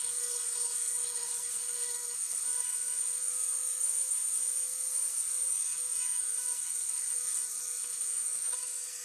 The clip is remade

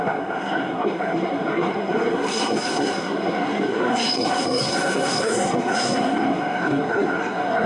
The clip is remade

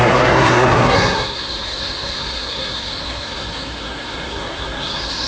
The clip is remade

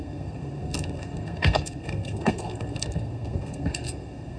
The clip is remade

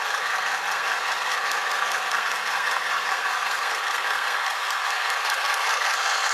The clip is remade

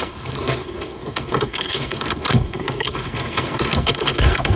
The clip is remade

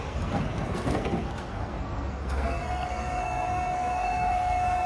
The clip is remade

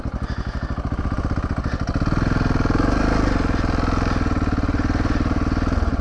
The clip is recorded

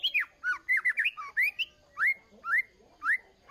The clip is recorded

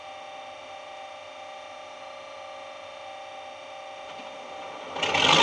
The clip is recorded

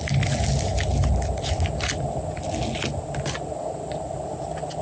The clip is recorded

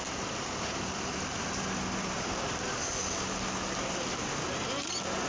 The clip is recorded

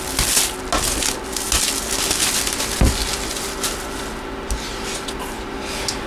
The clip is recorded